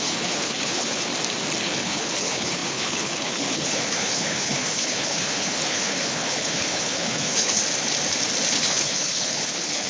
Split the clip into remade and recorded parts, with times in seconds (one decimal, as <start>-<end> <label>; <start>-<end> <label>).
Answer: 0.0-1.1 remade; 1.1-1.6 recorded; 1.6-7.6 remade; 7.6-8.5 recorded; 8.5-9.9 remade